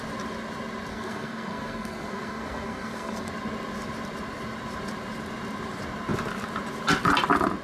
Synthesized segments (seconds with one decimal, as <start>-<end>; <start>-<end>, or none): 0.9-3.3